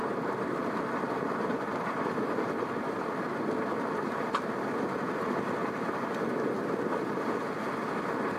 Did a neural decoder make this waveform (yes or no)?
no